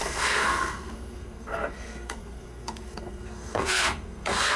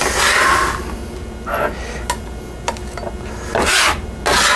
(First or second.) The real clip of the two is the second